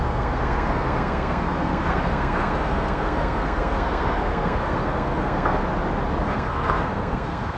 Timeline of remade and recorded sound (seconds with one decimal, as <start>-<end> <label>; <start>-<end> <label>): 0.0-5.6 remade; 5.6-6.2 recorded; 6.2-7.6 remade